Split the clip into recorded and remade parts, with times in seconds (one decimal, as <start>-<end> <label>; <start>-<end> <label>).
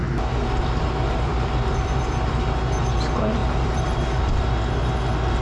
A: 0.0-1.3 recorded; 1.3-2.5 remade; 2.5-3.4 recorded; 3.4-4.2 remade; 4.2-5.4 recorded